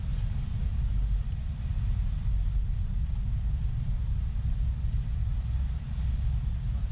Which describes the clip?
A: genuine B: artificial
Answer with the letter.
A